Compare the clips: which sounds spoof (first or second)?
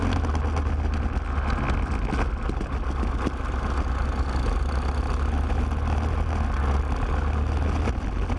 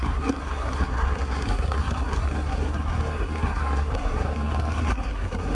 second